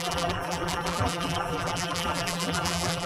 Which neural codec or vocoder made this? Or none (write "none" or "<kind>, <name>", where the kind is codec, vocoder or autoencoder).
vocoder, BigVGAN v2